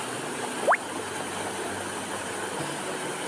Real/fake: real